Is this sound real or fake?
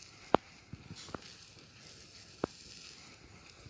real